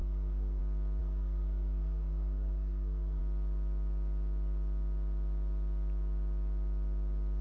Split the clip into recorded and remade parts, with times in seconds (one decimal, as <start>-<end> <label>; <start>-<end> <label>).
0.0-0.6 remade; 0.6-1.0 recorded; 1.0-3.2 remade; 3.2-7.4 recorded